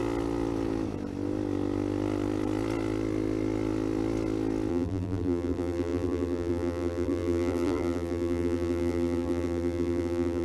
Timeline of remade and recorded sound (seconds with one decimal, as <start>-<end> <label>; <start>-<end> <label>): 0.0-4.7 recorded; 4.7-10.4 remade